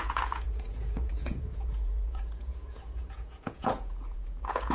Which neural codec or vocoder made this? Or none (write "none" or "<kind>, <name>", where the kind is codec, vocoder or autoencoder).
vocoder, Vocos